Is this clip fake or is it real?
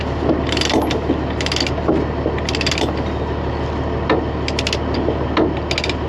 real